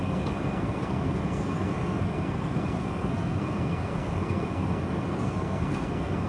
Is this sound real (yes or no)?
no